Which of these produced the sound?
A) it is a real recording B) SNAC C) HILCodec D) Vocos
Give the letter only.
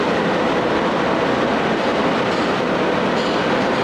A